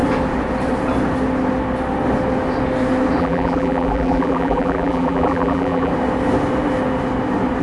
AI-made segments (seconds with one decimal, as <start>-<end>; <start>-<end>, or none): 3.2-5.9